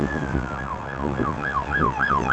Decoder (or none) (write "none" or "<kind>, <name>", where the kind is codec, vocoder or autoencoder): vocoder, WaveNeXt